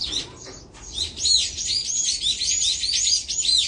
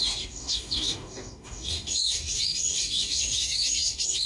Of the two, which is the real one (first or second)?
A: first